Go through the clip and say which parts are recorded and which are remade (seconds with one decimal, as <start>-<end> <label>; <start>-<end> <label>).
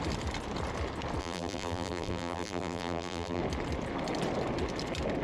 0.0-1.2 recorded; 1.2-3.4 remade; 3.4-5.2 recorded